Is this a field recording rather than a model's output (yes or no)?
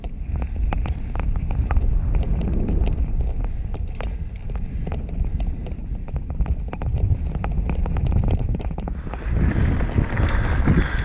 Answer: yes